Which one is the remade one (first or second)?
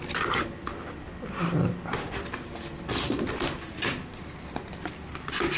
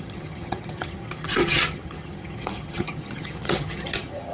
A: second